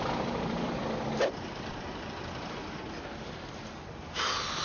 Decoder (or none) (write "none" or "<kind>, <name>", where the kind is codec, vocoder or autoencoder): vocoder, BigVGAN v2